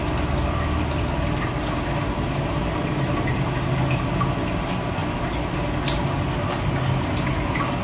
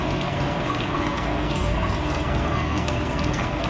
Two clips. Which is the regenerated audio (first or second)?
second